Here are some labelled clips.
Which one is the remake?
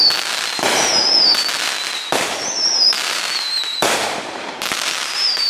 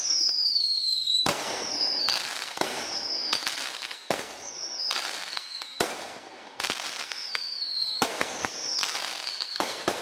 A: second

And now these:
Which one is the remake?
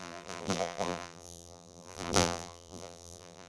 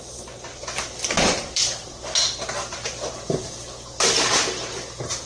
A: first